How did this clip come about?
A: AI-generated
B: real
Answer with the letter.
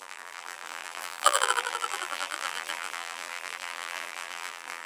A